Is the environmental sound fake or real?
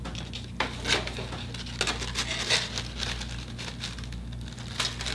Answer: real